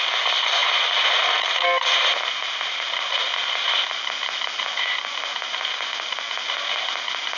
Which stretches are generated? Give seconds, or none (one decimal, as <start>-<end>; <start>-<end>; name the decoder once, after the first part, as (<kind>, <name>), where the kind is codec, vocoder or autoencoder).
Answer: 0.6-3.9 (vocoder, BigVGAN v2)